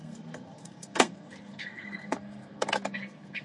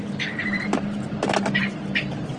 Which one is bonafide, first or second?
second